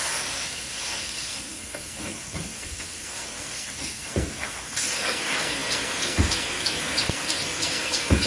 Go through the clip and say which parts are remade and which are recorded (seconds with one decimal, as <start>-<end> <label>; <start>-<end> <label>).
0.0-8.3 remade